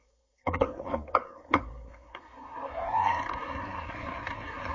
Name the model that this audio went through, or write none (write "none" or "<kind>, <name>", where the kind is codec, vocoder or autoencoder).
codec, SNAC